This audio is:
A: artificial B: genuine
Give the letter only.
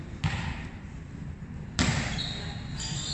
B